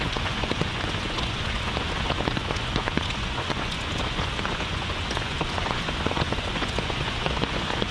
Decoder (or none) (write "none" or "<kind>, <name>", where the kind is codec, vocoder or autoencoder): vocoder, Vocos